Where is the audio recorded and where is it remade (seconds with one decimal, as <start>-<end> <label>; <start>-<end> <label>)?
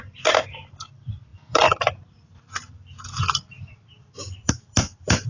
0.0-5.3 remade